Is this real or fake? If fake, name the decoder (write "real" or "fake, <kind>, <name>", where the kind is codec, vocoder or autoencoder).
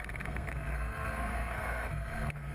fake, codec, SNAC